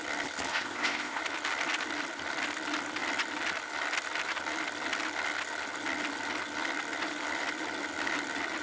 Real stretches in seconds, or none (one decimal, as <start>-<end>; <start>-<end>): 0.0-0.5; 1.2-8.6